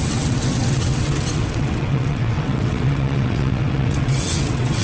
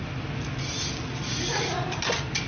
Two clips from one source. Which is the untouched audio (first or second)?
second